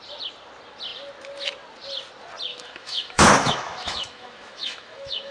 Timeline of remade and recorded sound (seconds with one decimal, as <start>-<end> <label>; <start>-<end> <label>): 0.0-2.5 recorded; 2.5-5.3 remade